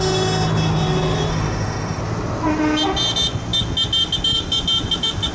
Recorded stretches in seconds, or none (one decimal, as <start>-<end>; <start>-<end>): 0.0-1.3; 2.0-5.3

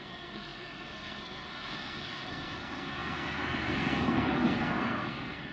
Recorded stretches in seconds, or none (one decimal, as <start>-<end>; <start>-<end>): none

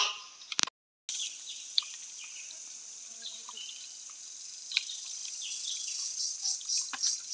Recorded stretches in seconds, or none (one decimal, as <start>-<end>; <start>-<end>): 0.0-7.3

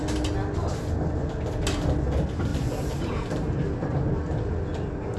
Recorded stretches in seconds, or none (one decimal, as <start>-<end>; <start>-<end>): 0.0-2.5; 3.6-5.2